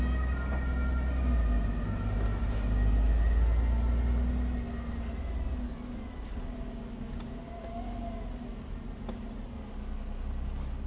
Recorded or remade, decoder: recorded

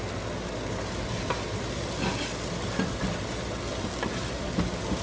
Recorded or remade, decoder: recorded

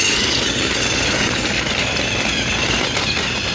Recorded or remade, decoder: recorded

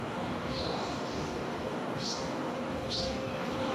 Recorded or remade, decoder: remade, codec, DAC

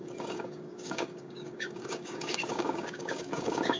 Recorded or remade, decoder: remade, codec, DAC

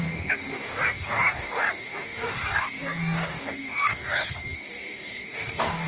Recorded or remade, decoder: remade, codec, DAC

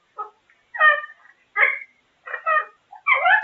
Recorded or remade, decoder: recorded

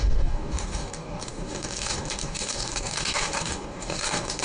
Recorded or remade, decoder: remade, codec, DAC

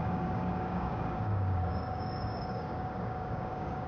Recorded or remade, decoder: remade, codec, DAC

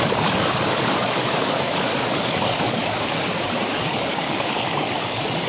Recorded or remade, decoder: remade, codec, DAC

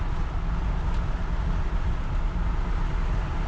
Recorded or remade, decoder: recorded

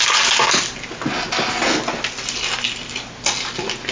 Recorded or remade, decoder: recorded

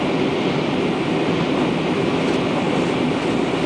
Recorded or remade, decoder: recorded